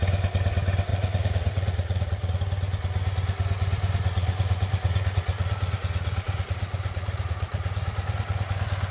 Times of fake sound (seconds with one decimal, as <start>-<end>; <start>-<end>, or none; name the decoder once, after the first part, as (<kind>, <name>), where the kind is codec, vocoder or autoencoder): 0.9-2.4 (vocoder, Vocos); 4.0-8.5